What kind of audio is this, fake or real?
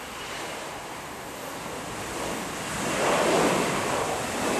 real